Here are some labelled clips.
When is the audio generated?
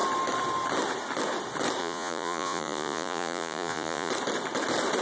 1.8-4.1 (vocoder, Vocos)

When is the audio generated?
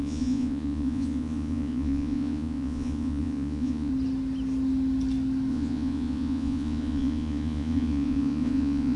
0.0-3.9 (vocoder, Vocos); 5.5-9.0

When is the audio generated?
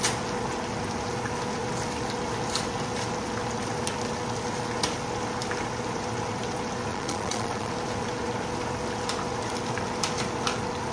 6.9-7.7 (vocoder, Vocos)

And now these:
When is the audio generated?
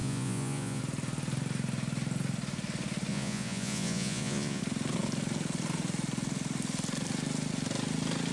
0.0-0.8 (vocoder, Vocos); 3.1-4.6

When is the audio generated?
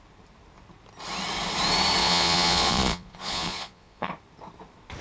2.0-4.1 (vocoder, Vocos)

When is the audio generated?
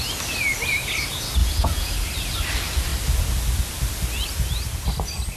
1.4-1.9 (vocoder, Vocos)